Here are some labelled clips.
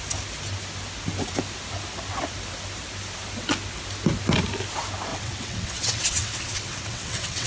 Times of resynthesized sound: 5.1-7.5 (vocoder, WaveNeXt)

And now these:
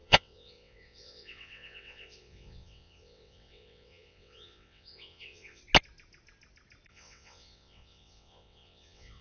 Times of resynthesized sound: 0.0-5.6 (vocoder, WaveNeXt); 6.9-9.2

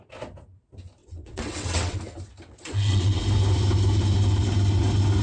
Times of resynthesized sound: 1.0-2.0 (vocoder, WaveNeXt); 2.5-3.2

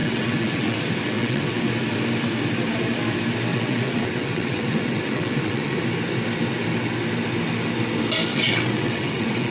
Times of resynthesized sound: 0.0-1.7 (vocoder, WaveNeXt); 3.5-5.8; 8.3-9.5

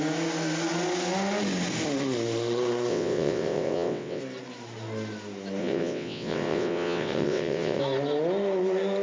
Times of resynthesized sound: 2.9-4.2 (vocoder, WaveNeXt); 5.6-7.8

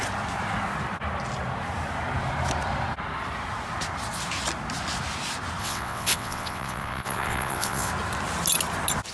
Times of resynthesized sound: 5.6-7.9 (vocoder, WaveNeXt)